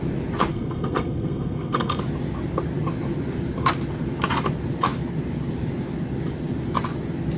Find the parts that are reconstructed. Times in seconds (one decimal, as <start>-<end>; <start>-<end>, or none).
0.5-2.0